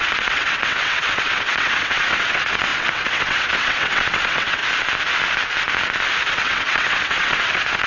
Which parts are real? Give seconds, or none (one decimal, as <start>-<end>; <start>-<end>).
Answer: 4.6-6.3